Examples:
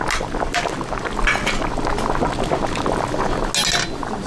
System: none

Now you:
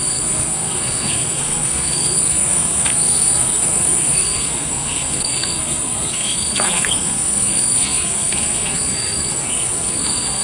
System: codec, SNAC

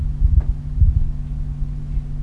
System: none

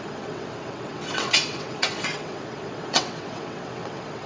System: vocoder, WaveNeXt